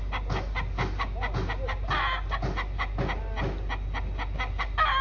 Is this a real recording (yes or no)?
yes